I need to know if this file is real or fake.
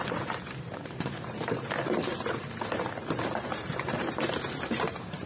fake